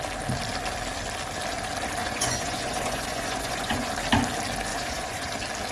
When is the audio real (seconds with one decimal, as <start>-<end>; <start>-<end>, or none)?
0.0-2.0; 3.9-4.7; 5.3-5.7